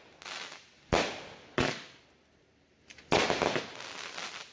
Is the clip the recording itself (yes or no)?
yes